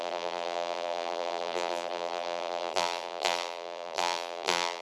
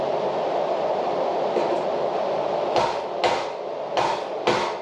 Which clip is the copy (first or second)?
first